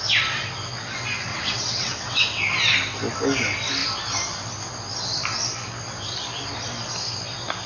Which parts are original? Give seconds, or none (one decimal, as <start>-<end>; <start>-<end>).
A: 0.0-1.3; 2.4-7.7